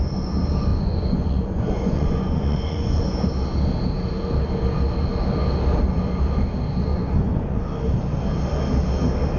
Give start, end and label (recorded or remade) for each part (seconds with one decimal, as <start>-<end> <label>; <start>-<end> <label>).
0.0-0.7 recorded; 0.7-3.0 remade; 3.0-6.9 recorded; 6.9-7.6 remade; 7.6-9.4 recorded